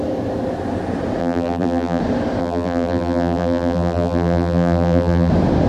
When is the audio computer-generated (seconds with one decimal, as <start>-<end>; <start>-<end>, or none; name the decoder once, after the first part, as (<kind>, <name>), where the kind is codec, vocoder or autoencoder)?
1.2-2.0 (vocoder, BigVGAN v2); 2.4-5.3